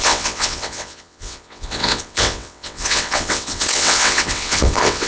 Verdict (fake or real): fake